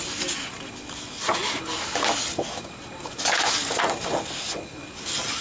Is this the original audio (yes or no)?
yes